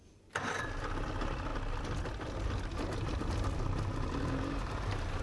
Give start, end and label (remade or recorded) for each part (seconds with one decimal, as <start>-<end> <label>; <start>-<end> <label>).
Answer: 0.0-5.2 recorded

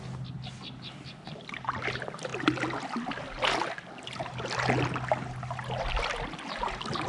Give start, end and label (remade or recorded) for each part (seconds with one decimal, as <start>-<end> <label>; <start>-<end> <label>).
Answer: 0.0-7.1 recorded

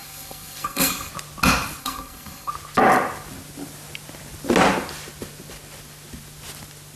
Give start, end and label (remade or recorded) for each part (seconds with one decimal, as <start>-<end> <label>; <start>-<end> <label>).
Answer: 0.0-1.1 remade; 1.1-1.8 recorded; 1.8-2.5 remade; 2.5-7.0 recorded